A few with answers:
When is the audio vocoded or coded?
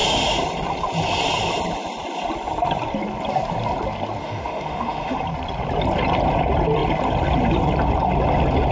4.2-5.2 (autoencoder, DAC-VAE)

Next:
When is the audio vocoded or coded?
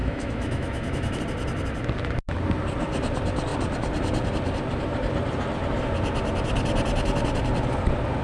0.0-1.2 (autoencoder, DAC-VAE)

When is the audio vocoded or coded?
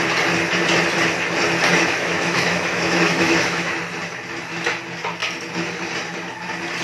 1.7-3.7 (autoencoder, DAC-VAE)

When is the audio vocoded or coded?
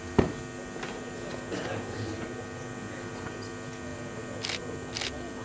none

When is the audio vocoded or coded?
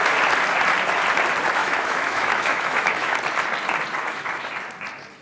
1.6-3.2 (autoencoder, DAC-VAE); 4.0-4.5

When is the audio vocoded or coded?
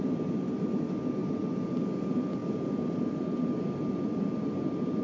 none